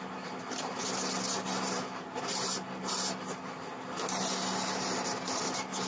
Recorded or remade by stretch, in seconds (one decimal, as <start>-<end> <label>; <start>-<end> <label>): 0.0-5.9 recorded